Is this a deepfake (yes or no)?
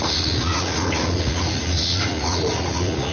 yes